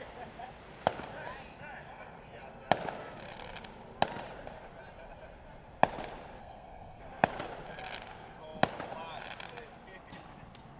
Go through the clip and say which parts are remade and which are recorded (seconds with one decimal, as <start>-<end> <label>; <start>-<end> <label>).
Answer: 0.0-6.4 recorded; 6.4-7.0 remade; 7.0-10.8 recorded